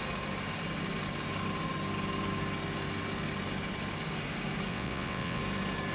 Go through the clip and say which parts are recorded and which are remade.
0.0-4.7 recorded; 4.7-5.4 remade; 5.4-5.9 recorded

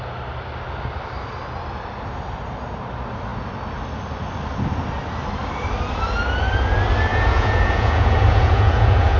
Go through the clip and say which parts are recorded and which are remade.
0.0-7.1 recorded; 7.1-9.2 remade

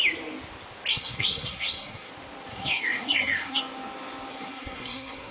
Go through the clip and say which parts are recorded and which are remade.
0.0-0.9 recorded; 0.9-2.1 remade; 2.1-2.5 recorded; 2.5-3.6 remade; 3.6-4.3 recorded; 4.3-5.3 remade

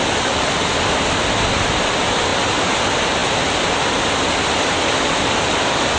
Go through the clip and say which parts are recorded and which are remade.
0.0-6.0 recorded

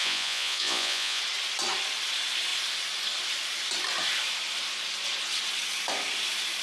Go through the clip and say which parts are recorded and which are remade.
0.0-1.2 remade; 1.2-6.6 recorded

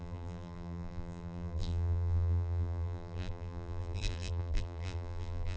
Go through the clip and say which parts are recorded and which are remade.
0.0-5.6 remade